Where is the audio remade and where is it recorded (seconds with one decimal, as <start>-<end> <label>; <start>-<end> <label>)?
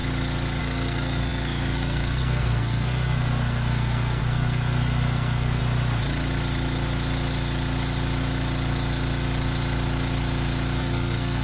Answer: 0.0-0.6 recorded; 0.6-5.6 remade; 5.6-10.8 recorded; 10.8-11.4 remade